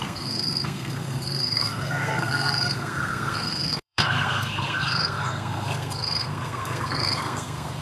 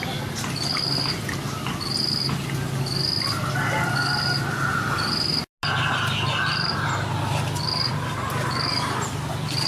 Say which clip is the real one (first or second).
second